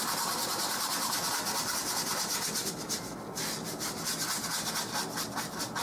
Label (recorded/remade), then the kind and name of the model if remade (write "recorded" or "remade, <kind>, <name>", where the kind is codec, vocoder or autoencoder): recorded